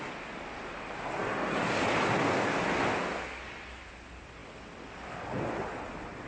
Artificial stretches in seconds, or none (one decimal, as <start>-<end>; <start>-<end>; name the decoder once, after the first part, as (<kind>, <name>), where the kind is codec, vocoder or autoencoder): none